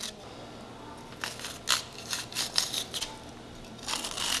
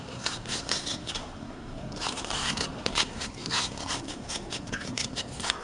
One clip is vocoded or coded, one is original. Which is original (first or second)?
first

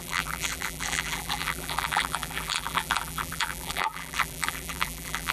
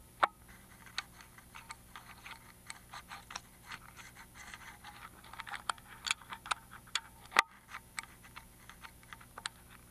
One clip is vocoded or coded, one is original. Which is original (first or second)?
second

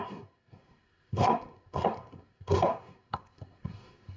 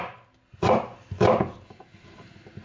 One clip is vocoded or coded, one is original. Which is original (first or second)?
second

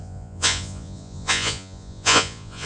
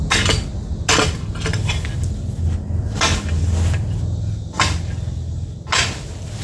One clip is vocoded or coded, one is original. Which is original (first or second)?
second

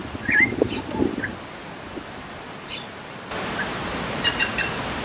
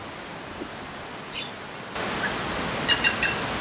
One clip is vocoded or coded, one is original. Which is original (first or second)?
second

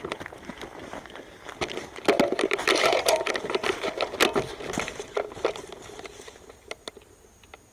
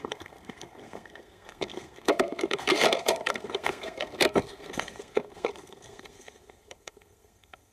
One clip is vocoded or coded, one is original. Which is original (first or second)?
first